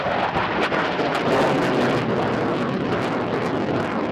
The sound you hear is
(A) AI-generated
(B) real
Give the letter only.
B